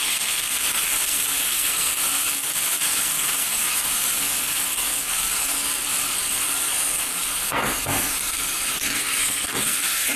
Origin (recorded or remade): remade